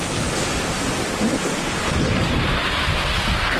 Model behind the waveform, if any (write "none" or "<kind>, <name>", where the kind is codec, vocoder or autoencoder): none